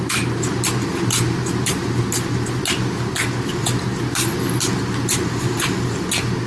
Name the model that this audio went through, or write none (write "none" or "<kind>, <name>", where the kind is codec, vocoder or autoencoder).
none